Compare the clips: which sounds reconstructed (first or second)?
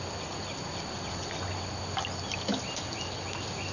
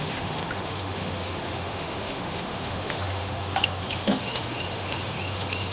second